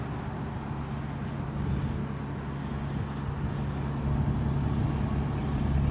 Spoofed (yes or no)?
no